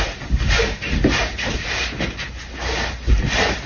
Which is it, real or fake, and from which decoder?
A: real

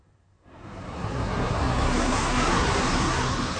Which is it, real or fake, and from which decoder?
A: fake, codec, SNAC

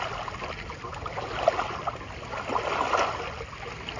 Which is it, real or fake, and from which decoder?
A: real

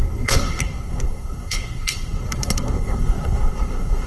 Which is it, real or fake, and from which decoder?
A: fake, codec, SNAC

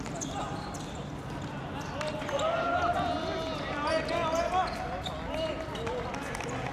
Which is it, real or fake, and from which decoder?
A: real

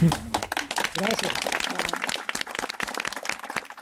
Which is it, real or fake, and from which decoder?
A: real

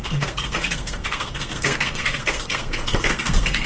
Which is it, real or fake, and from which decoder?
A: fake, codec, SNAC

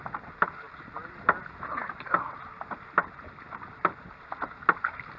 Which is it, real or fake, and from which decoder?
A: real